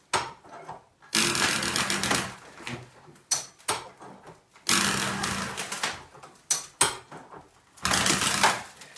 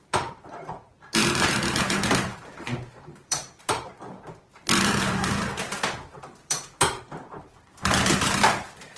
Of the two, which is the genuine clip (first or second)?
first